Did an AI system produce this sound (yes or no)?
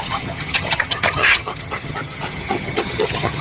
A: yes